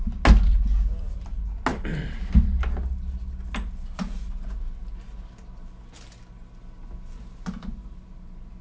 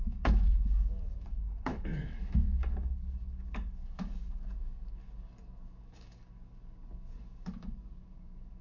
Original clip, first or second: first